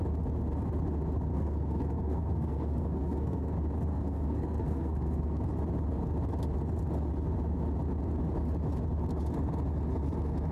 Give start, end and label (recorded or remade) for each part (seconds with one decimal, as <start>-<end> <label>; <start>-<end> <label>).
0.0-1.3 recorded; 1.3-3.5 remade; 3.5-3.9 recorded; 3.9-5.4 remade; 5.4-10.5 recorded